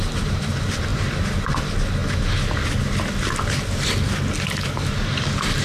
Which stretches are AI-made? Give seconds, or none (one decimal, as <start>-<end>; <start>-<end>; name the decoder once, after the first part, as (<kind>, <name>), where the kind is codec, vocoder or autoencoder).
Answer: none